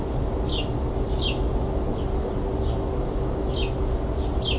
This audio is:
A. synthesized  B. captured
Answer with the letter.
B